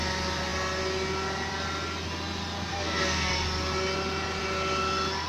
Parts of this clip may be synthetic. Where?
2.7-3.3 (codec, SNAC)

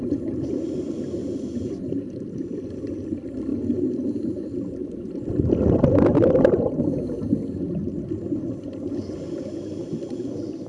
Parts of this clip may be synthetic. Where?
none

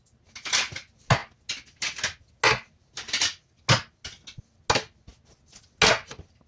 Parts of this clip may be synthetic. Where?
none

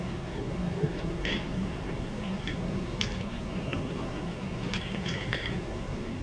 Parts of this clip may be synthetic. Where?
0.0-6.2 (codec, SNAC)